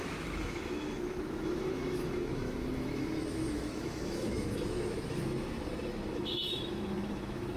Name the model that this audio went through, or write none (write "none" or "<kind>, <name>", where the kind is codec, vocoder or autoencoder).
autoencoder, DAC-VAE